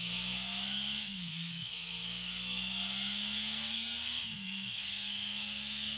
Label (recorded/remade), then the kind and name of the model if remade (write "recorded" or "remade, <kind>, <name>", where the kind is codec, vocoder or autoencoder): remade, codec, SNAC